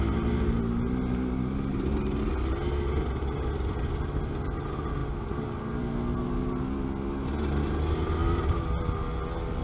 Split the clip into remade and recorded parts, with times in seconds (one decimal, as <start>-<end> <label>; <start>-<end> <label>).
0.0-1.7 recorded; 1.7-2.3 remade; 2.3-9.6 recorded